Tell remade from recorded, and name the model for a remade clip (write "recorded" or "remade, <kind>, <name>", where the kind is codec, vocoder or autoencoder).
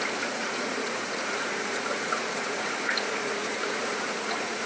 remade, vocoder, Vocos